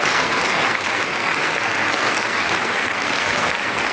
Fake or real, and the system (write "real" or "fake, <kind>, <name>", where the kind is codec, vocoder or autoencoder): fake, codec, SNAC